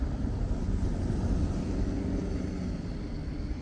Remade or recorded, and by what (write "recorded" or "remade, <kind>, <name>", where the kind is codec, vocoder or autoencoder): recorded